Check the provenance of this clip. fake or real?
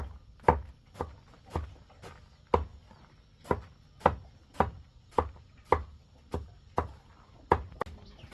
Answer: real